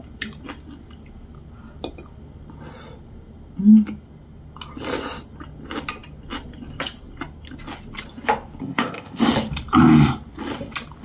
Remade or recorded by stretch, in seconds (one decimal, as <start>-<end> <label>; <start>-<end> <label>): 0.0-8.6 recorded; 8.6-9.2 remade; 9.2-11.0 recorded